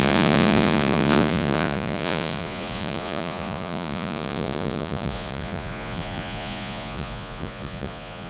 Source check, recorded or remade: remade